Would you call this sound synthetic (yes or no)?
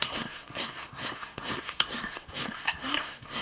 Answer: yes